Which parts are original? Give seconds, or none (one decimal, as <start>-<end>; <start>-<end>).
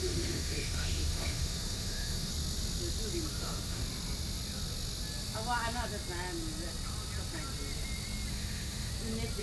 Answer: 2.3-3.3; 3.8-8.3; 8.9-9.4